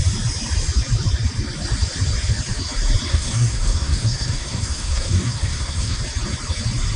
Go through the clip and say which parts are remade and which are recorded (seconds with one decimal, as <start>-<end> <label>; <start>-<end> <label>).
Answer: 0.0-3.1 recorded; 3.1-6.0 remade; 6.0-7.0 recorded